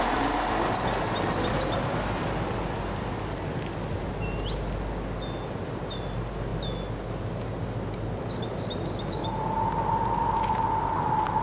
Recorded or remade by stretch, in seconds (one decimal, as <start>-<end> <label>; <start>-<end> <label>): 0.0-11.4 recorded